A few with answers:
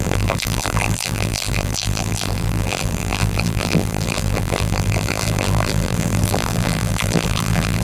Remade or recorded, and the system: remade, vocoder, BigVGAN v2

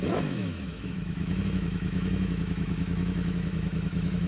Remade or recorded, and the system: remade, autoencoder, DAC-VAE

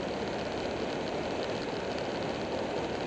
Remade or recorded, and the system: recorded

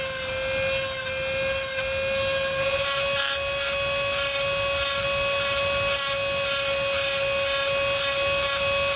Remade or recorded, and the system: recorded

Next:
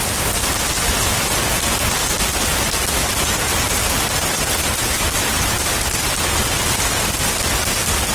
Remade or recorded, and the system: recorded